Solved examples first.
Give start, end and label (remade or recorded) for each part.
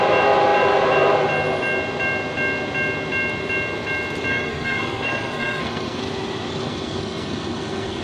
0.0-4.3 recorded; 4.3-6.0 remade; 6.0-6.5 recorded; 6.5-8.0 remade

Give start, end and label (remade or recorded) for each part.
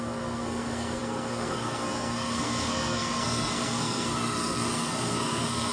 0.0-5.7 remade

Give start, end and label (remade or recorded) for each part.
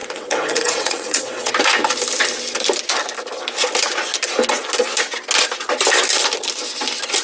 0.0-1.5 remade; 1.5-7.2 recorded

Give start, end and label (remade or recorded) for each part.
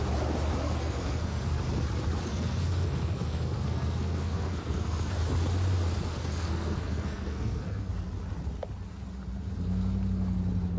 0.0-0.6 recorded; 0.6-1.6 remade; 1.6-2.3 recorded; 2.3-5.1 remade; 5.1-6.1 recorded; 6.1-7.9 remade; 7.9-10.8 recorded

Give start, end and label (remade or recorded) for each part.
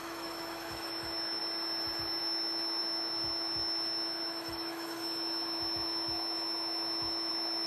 0.0-1.4 remade; 1.4-2.2 recorded; 2.2-7.7 remade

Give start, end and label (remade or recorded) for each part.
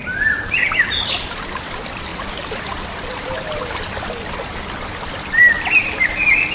0.0-6.5 recorded